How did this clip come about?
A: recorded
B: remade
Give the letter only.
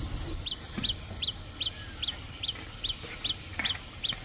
B